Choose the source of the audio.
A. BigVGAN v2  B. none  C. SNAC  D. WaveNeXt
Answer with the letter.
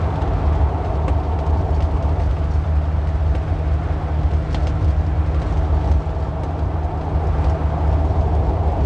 B